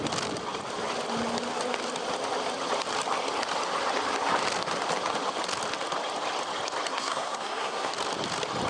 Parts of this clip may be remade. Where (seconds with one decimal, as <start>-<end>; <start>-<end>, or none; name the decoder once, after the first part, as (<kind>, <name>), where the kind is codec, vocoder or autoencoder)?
6.9-7.9 (codec, SNAC)